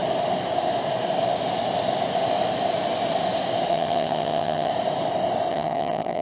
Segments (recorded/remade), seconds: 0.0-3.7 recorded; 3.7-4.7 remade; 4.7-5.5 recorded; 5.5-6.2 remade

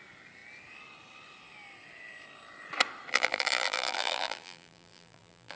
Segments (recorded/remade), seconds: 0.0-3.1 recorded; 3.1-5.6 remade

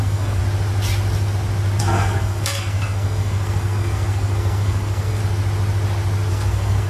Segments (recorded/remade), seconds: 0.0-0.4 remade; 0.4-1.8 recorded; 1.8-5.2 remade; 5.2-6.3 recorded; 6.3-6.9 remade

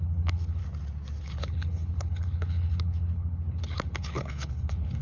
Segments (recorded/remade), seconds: 0.0-0.6 remade; 0.6-1.2 recorded; 1.2-5.0 remade

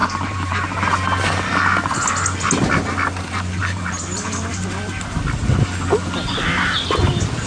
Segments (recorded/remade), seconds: 0.0-0.8 remade; 0.8-3.6 recorded; 3.6-5.0 remade; 5.0-7.5 recorded

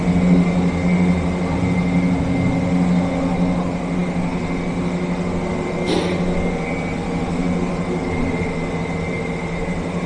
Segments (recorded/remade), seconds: 0.0-10.1 recorded

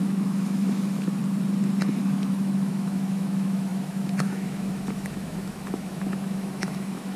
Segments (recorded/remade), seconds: 0.0-1.2 remade; 1.2-1.9 recorded; 1.9-7.2 remade

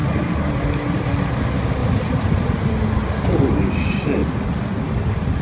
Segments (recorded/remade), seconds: 0.0-0.7 remade; 0.7-1.8 recorded; 1.8-2.7 remade; 2.7-5.4 recorded